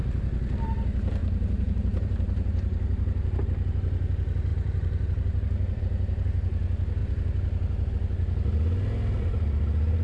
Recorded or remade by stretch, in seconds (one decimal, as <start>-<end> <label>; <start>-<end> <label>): 0.0-1.2 recorded; 1.2-3.4 remade; 3.4-4.5 recorded; 4.5-5.8 remade; 5.8-10.0 recorded